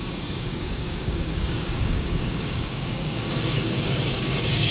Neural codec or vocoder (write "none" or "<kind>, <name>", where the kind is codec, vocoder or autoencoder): codec, DAC